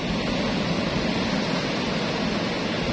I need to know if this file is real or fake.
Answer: real